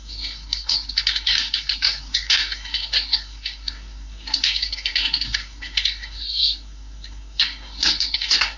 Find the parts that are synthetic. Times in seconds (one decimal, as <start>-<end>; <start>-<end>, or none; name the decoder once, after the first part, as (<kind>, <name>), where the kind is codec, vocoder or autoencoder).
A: 0.0-8.6 (codec, SNAC)